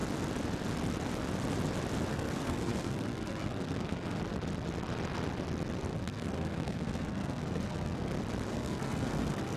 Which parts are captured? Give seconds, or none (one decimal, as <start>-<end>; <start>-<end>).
0.0-2.1; 4.2-5.9; 8.1-8.5